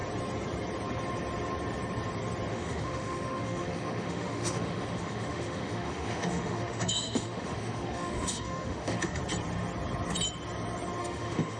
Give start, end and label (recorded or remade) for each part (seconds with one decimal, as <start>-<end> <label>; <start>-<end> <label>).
0.0-2.5 recorded; 2.5-9.2 remade; 9.2-11.0 recorded; 11.0-11.6 remade